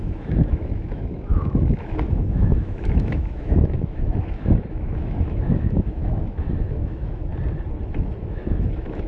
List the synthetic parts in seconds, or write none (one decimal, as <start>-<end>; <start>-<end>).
0.0-7.3; 8.2-9.1